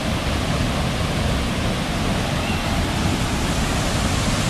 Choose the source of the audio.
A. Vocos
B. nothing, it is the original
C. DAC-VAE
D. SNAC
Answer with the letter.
B